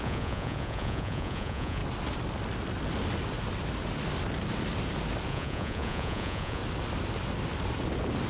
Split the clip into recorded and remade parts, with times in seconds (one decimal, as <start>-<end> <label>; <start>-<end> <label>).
0.0-1.8 remade; 1.8-5.3 recorded; 5.3-6.6 remade; 6.6-8.3 recorded